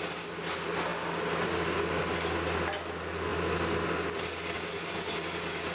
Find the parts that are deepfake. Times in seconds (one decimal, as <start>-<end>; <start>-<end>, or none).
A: none